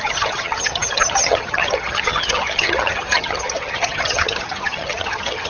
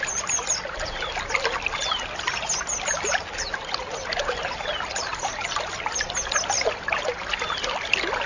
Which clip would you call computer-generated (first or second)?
first